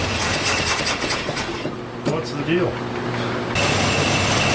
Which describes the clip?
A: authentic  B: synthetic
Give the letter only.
A